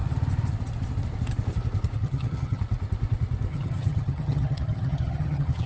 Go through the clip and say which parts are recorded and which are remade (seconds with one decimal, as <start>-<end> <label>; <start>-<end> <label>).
0.0-2.0 recorded; 2.0-2.6 remade; 2.6-3.5 recorded; 3.5-5.7 remade